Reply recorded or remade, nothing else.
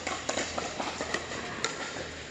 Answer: recorded